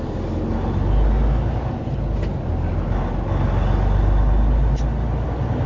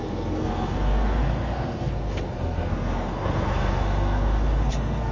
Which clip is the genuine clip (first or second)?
first